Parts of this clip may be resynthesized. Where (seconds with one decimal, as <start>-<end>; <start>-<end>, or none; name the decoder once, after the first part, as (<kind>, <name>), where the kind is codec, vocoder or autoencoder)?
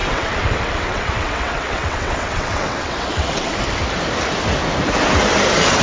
0.0-3.5 (vocoder, WaveNeXt)